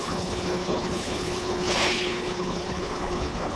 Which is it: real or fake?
fake